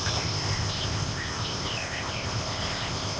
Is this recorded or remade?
remade